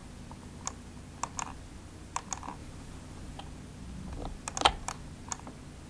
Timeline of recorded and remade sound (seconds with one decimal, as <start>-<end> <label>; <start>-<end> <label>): 0.0-5.9 recorded